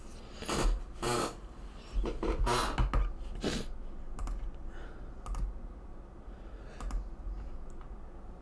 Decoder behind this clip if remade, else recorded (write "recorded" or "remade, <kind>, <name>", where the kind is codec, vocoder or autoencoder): recorded